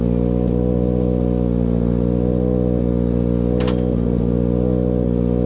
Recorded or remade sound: recorded